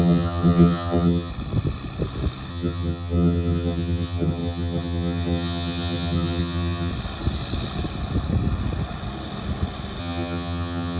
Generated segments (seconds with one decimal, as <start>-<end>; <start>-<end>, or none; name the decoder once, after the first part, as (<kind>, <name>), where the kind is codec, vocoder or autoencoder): 0.0-1.3 (vocoder, HiFi-GAN); 2.5-6.9; 10.0-11.0